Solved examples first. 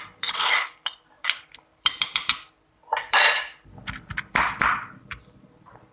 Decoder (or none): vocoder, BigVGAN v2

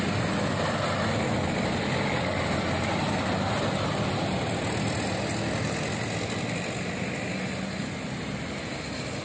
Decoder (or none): none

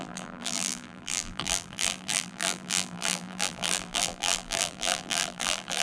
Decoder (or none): vocoder, BigVGAN v2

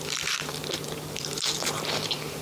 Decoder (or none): vocoder, BigVGAN v2